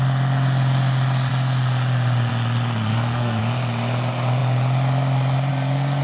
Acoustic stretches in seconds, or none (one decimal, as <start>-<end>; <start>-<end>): 0.0-2.9; 3.4-6.0